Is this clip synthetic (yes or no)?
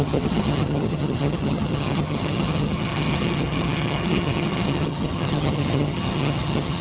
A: yes